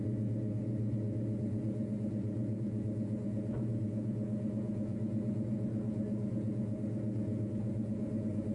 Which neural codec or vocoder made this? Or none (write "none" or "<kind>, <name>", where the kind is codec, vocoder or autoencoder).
vocoder, Vocos